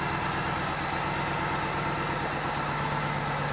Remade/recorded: recorded